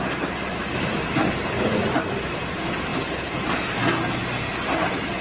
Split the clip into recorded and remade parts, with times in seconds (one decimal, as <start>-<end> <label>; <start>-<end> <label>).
0.0-5.2 recorded

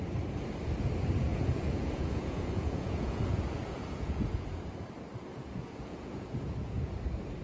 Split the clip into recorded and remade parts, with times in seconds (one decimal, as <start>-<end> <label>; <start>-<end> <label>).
0.0-1.2 recorded; 1.2-4.6 remade; 4.6-5.3 recorded; 5.3-6.9 remade; 6.9-7.4 recorded